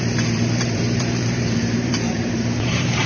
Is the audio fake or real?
fake